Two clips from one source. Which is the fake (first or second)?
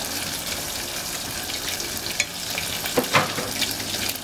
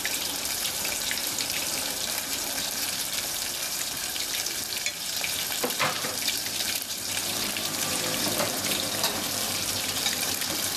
second